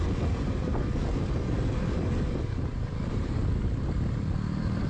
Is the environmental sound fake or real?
fake